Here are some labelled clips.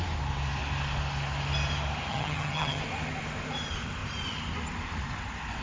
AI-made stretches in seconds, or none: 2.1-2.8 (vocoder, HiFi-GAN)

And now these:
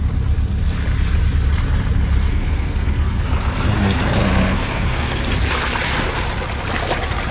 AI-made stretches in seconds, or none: 2.3-3.2 (codec, SNAC); 4.2-5.2

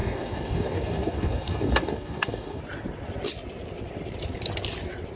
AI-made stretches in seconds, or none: 0.0-2.6 (codec, DAC)

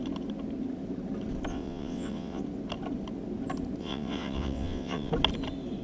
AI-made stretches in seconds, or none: 1.5-2.4 (vocoder, WaveNeXt); 3.8-5.1

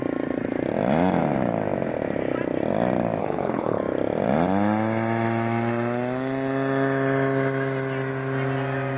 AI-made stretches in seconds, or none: 3.2-3.8 (codec, HILCodec)

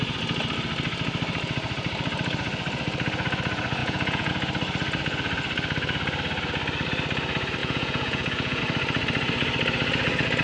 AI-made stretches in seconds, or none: 3.8-4.3 (vocoder, Vocos); 7.6-8.6

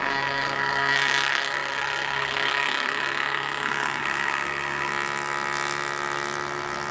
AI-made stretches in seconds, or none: 0.0-4.9 (codec, SNAC)

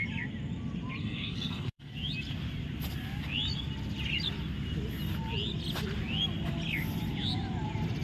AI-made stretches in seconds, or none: 1.0-1.9 (codec, SNAC)